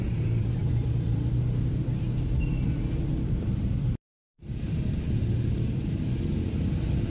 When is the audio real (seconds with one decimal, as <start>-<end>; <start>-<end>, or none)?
none